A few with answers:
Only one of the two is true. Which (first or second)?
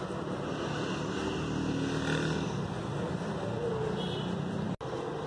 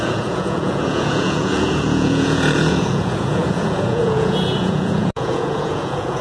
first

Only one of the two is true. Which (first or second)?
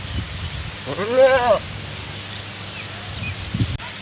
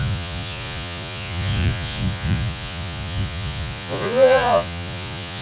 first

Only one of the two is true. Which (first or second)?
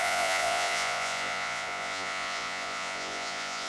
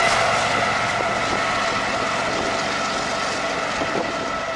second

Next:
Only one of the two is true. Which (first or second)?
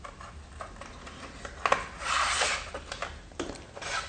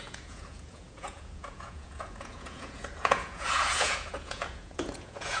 first